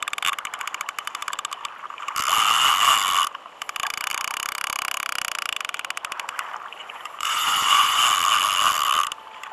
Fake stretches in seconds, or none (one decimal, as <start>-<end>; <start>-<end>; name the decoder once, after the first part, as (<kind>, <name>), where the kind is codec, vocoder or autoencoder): 6.8-8.0 (vocoder, Vocos)